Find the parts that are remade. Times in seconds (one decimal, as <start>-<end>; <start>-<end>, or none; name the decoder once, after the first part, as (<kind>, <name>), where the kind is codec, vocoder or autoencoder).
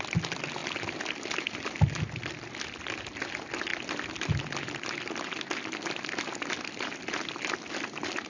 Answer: none